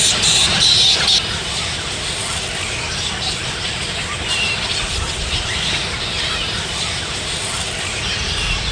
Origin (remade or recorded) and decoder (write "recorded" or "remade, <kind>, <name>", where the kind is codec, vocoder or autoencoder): recorded